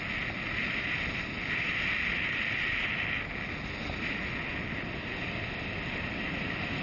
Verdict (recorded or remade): recorded